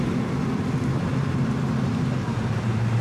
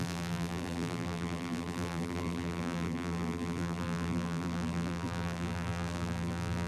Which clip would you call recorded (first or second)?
first